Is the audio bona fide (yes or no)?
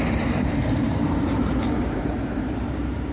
no